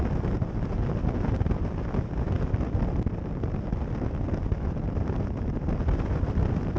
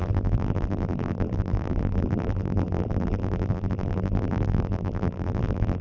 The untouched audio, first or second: first